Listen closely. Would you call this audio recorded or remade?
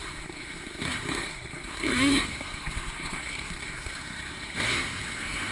remade